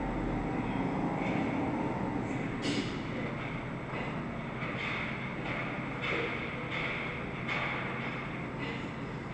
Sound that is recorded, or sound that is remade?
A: recorded